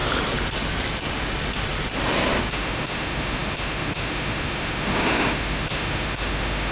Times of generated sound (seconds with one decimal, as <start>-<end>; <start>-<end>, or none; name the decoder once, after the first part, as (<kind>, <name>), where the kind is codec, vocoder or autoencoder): 2.5-6.7 (autoencoder, DAC-VAE)